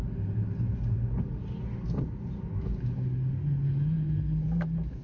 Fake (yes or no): no